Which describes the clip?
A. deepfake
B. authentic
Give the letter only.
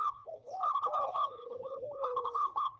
A